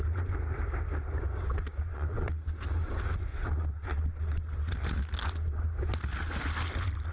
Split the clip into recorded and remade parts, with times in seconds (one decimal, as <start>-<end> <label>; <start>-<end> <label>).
0.0-1.9 recorded; 1.9-2.4 remade; 2.4-3.3 recorded; 3.3-4.7 remade; 4.7-7.1 recorded